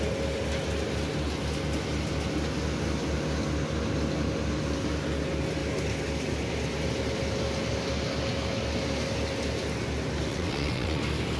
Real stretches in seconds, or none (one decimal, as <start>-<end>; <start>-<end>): 0.0-10.3; 11.0-11.4